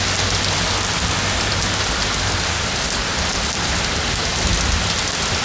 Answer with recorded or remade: recorded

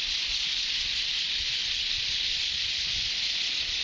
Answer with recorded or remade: recorded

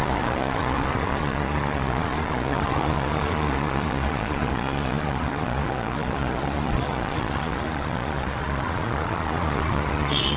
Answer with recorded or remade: remade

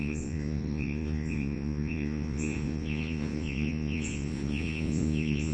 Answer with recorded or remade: remade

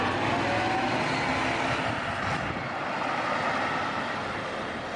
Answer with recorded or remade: recorded